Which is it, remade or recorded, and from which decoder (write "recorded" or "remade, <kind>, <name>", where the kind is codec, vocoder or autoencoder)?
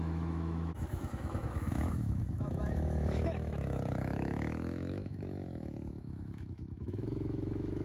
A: remade, autoencoder, DAC-VAE